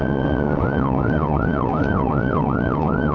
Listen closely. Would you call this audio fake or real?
fake